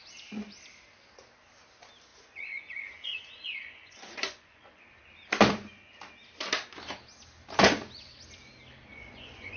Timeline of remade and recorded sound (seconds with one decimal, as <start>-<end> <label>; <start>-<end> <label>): 0.0-2.1 recorded; 2.1-4.8 remade; 4.8-8.9 recorded; 8.9-9.6 remade